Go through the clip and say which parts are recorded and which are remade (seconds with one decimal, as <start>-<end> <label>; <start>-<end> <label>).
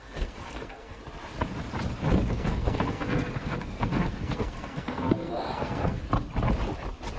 0.0-1.0 remade; 1.0-2.3 recorded; 2.3-6.0 remade; 6.0-7.2 recorded